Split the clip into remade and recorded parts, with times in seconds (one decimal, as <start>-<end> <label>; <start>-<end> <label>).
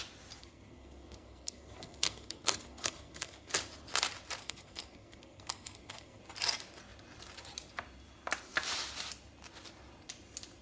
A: 0.0-0.4 recorded; 0.4-3.5 remade; 3.5-4.4 recorded; 4.4-6.2 remade; 6.2-10.6 recorded